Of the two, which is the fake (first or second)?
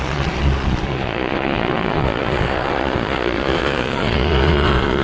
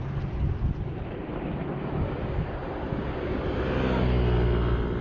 first